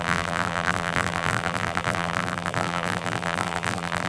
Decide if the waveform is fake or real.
fake